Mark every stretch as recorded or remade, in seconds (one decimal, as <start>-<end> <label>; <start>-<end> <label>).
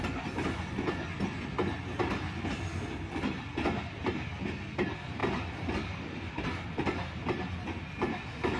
0.0-5.2 recorded; 5.2-6.3 remade; 6.3-8.6 recorded